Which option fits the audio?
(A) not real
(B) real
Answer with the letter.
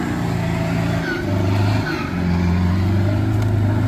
B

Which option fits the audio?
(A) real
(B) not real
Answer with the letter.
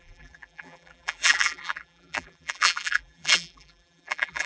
B